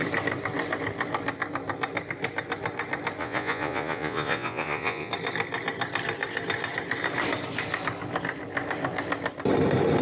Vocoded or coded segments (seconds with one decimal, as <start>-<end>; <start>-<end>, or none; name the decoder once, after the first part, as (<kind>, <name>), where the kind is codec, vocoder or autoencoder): 3.2-5.1 (vocoder, Vocos)